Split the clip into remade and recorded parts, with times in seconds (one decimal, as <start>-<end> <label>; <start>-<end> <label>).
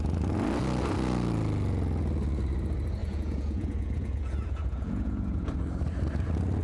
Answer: 0.0-3.0 recorded; 3.0-5.5 remade; 5.5-6.6 recorded